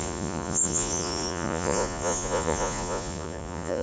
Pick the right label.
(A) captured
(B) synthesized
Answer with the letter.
B